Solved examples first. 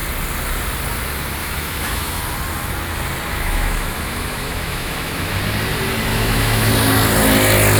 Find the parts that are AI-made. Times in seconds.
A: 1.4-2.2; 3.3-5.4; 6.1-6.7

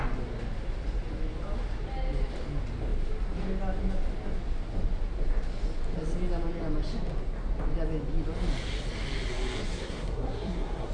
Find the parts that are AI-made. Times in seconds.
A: 9.7-10.9

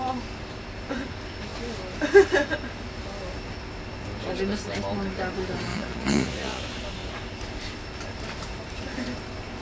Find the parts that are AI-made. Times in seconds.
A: 5.7-6.6